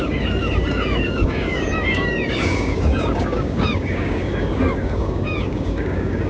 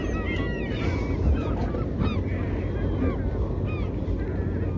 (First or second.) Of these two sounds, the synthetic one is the first